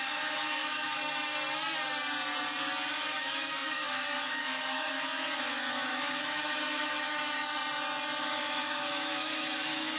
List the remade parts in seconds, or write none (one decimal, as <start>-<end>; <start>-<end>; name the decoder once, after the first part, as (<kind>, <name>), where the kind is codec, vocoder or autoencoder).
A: 0.0-1.0 (autoencoder, DAC-VAE); 2.9-7.6; 8.2-10.0

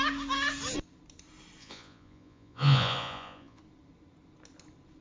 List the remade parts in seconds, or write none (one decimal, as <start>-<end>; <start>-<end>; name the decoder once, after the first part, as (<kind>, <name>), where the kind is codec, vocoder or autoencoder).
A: 1.6-3.6 (vocoder, Vocos)

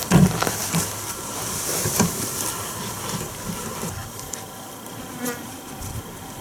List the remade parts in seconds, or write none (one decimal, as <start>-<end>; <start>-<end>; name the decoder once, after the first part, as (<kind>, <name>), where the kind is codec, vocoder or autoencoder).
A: none

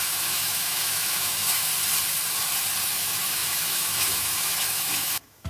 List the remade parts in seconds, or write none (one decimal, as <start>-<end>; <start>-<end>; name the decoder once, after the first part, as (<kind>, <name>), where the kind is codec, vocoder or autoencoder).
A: 0.0-1.7 (autoencoder, DAC-VAE); 2.9-5.5

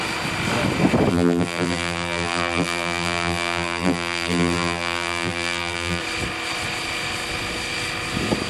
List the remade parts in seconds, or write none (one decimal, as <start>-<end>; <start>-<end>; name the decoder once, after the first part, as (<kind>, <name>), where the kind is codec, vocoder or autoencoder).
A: 1.1-6.0 (vocoder, BigVGAN v2)

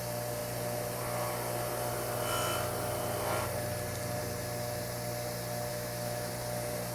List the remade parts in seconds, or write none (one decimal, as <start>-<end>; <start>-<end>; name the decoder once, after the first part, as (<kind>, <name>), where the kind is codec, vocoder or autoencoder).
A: 5.7-6.3 (autoencoder, DAC-VAE)

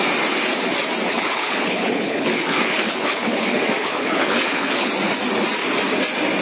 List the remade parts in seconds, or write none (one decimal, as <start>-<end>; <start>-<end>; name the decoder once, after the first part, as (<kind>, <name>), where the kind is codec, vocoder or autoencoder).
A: 1.1-4.9 (codec, HILCodec)

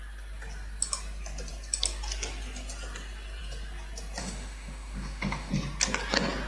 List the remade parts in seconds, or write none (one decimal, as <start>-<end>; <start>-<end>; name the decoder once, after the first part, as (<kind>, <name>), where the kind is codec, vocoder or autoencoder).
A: 4.2-5.5 (autoencoder, DAC-VAE)